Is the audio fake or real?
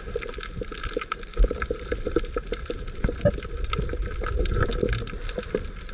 real